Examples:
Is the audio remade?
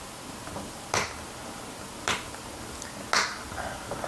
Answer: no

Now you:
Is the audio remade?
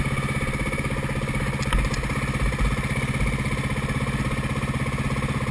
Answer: no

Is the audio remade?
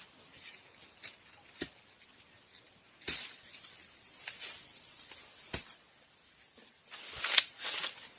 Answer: no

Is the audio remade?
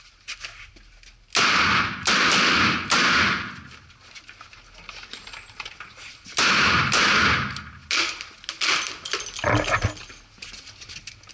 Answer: no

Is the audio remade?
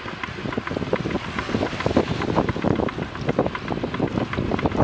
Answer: no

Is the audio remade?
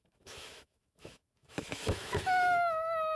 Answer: yes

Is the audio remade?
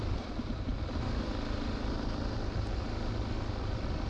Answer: no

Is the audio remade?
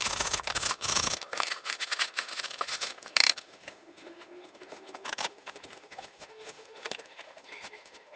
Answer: yes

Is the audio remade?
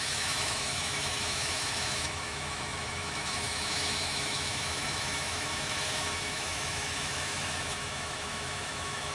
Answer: yes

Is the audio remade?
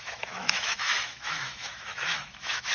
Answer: yes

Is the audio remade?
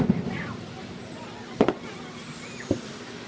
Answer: no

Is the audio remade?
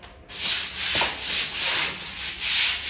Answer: no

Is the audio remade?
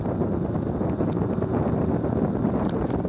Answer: no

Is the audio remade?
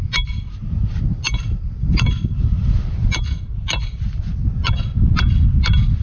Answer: no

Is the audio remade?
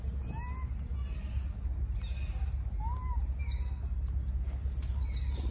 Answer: no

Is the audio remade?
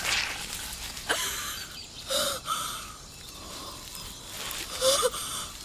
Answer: no